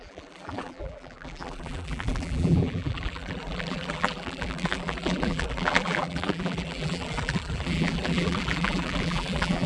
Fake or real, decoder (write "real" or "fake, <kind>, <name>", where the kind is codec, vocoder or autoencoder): fake, vocoder, BigVGAN v2